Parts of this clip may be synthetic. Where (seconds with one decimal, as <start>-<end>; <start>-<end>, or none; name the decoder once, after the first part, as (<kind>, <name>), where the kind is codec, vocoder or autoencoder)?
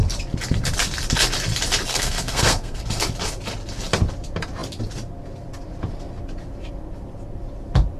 1.9-2.8 (codec, SNAC)